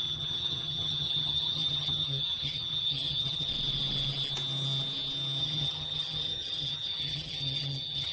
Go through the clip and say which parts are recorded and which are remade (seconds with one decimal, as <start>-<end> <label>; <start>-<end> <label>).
0.0-3.5 remade; 3.5-5.4 recorded; 5.4-8.1 remade